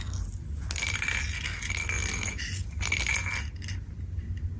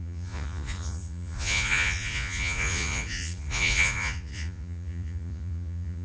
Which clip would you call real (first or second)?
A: first